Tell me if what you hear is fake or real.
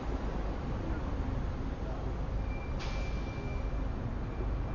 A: real